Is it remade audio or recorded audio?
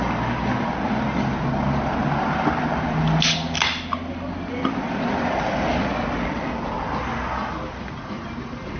recorded